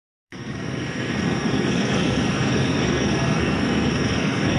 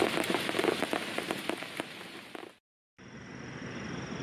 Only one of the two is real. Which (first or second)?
second